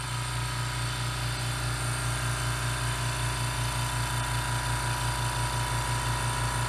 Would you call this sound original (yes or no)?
yes